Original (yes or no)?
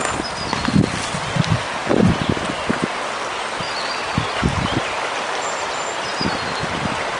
yes